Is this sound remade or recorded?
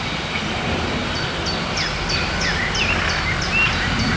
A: recorded